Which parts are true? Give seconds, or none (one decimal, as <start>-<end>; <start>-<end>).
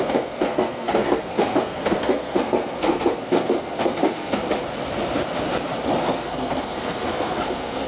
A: 4.4-6.0